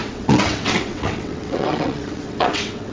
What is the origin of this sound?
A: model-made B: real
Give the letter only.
A